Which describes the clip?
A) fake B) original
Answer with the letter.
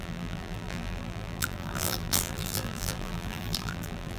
A